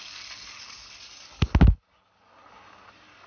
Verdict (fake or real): real